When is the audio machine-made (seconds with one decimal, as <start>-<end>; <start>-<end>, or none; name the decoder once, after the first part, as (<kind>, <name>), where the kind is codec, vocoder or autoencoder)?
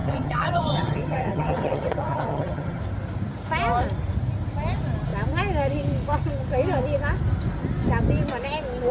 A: 0.0-2.8 (vocoder, HiFi-GAN)